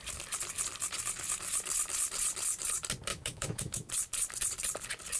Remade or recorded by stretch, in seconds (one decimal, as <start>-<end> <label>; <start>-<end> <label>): 0.0-3.1 recorded; 3.1-3.9 remade; 3.9-5.2 recorded